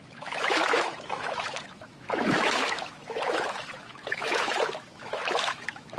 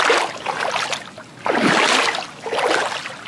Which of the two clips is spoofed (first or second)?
first